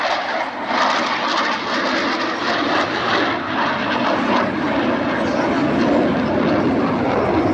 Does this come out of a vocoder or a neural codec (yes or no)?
no